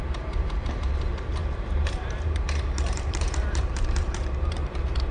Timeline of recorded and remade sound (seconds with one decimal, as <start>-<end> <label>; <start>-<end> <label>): 0.0-5.1 remade